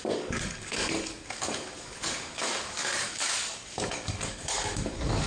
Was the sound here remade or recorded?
remade